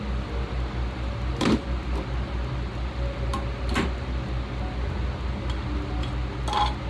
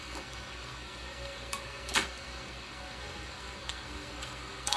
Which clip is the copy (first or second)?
second